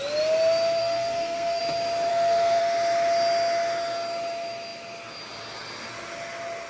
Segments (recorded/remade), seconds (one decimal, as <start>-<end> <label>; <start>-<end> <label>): 0.0-0.8 recorded; 0.8-1.6 remade; 1.6-2.1 recorded; 2.1-2.6 remade; 2.6-6.7 recorded